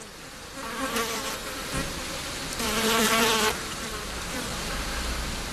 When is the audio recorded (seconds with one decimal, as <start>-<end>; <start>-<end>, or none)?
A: none